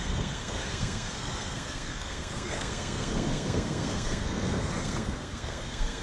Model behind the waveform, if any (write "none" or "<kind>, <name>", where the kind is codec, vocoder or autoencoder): codec, SNAC